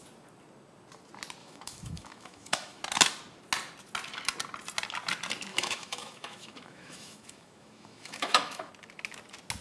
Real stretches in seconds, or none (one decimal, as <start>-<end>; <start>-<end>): 0.0-1.4; 2.8-5.5; 8.7-9.6